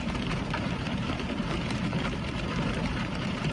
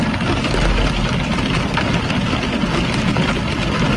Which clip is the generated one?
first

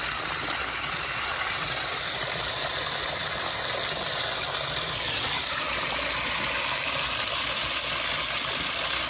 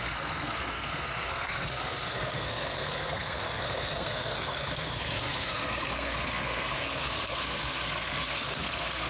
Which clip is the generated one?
second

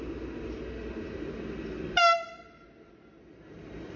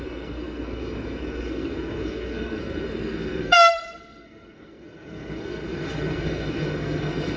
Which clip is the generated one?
second